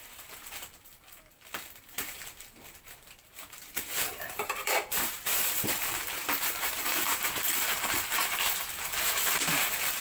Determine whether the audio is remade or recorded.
remade